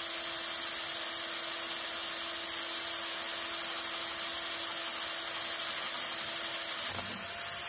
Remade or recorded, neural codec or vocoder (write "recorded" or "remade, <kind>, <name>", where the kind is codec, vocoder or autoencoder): recorded